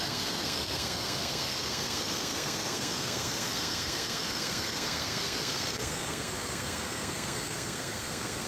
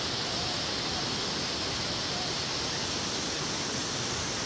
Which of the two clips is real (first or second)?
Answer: second